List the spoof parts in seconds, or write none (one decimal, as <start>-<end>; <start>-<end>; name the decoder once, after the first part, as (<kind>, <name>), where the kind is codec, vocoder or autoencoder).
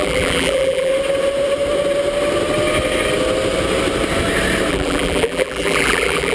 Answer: 0.0-0.9 (vocoder, BigVGAN v2); 4.7-6.3